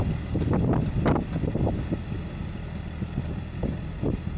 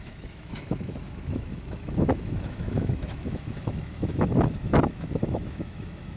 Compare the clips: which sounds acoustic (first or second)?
first